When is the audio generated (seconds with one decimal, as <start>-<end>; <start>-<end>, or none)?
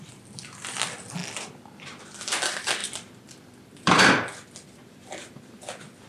0.0-6.1